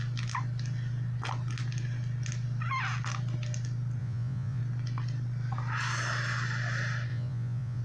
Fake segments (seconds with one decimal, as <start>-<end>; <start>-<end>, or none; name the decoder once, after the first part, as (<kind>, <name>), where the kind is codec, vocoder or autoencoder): 4.0-4.6 (vocoder, Vocos); 7.1-7.8